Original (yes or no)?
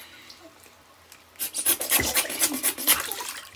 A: yes